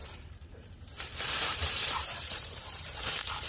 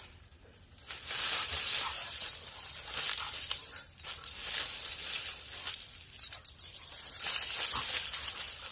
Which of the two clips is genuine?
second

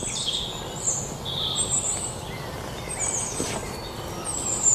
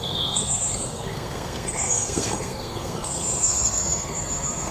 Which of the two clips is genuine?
first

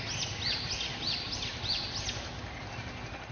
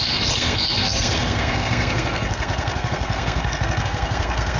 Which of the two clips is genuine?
first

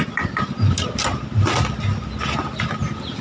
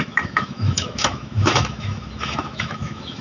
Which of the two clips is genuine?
first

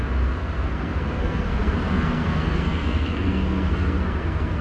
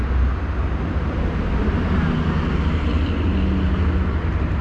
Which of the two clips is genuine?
second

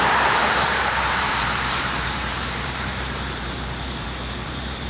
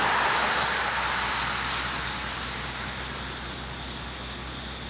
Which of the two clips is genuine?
second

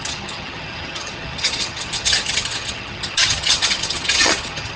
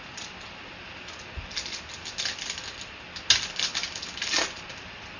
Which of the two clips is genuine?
second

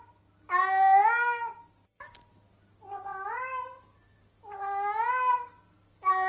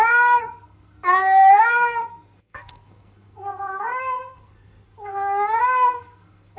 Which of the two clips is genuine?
first